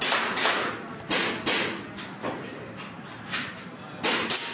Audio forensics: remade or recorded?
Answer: recorded